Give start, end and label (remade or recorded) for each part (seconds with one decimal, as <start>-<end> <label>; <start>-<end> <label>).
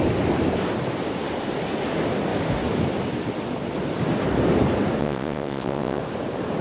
0.0-5.0 recorded; 5.0-6.0 remade; 6.0-6.6 recorded